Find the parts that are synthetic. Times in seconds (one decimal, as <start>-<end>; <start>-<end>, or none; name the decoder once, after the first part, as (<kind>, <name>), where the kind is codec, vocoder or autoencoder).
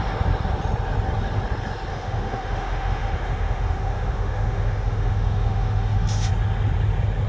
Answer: 1.9-6.3 (autoencoder, DAC-VAE)